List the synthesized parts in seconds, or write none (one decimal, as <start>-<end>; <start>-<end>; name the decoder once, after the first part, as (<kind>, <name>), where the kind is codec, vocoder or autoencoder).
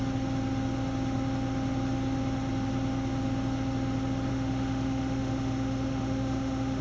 4.3-6.8 (autoencoder, DAC-VAE)